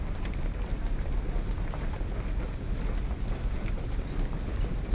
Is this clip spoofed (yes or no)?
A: no